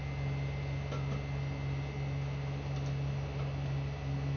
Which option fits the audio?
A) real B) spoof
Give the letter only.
A